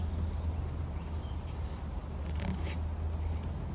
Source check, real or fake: real